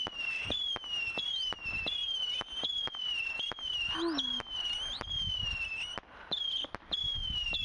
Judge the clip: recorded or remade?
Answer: recorded